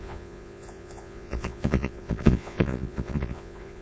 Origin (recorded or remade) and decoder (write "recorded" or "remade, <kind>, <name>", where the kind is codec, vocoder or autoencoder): remade, vocoder, Vocos